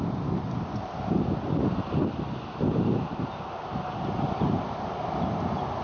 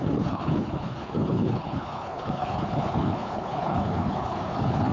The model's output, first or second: second